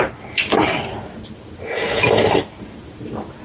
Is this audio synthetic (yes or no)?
no